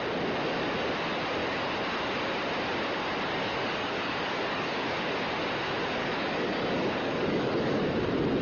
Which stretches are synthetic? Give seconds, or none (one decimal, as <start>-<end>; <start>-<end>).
3.3-5.1; 6.0-7.8